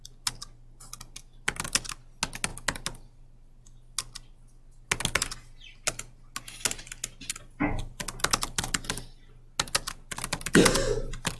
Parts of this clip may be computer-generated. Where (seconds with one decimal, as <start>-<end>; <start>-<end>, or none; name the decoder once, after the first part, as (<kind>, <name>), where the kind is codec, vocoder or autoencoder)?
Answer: none